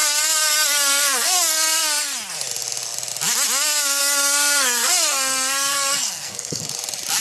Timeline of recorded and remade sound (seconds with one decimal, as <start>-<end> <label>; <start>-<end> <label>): 0.0-1.8 remade; 1.8-4.0 recorded; 4.0-6.7 remade; 6.7-7.2 recorded